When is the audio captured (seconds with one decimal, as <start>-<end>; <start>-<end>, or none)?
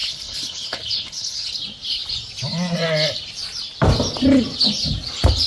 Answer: 1.5-5.5